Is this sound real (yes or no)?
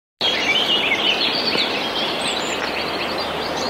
yes